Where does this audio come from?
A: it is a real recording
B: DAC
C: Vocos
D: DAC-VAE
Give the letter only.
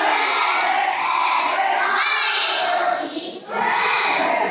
A